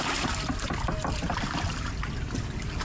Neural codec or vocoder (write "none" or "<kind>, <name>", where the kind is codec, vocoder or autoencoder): none